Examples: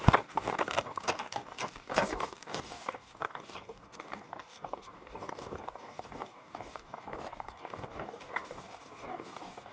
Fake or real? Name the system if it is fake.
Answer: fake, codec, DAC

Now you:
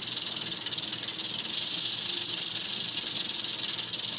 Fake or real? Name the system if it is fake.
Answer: real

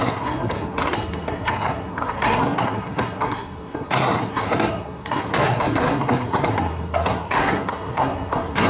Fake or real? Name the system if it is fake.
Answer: fake, codec, SNAC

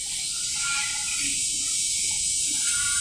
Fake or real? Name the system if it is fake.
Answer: real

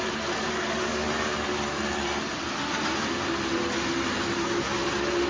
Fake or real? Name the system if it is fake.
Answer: real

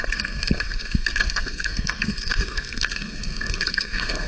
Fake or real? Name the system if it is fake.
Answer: fake, codec, SNAC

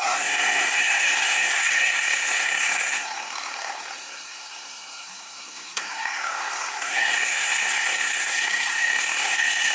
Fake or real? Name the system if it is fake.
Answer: fake, codec, SNAC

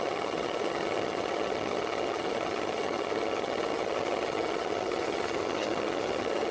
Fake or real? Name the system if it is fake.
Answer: fake, vocoder, HiFi-GAN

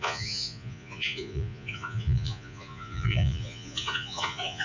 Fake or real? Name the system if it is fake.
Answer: fake, vocoder, Vocos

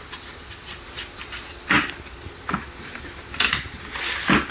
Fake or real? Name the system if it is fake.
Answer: real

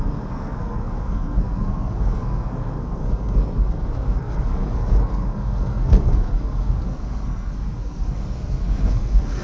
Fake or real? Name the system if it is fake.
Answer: fake, codec, SNAC